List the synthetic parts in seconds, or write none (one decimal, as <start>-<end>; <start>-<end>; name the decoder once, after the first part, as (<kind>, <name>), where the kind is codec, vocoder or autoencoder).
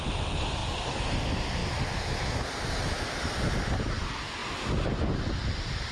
none